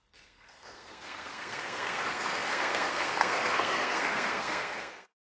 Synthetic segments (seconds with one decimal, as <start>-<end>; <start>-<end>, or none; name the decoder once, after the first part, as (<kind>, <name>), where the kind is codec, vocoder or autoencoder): 0.0-5.2 (codec, SNAC)